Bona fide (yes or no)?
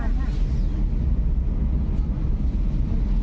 yes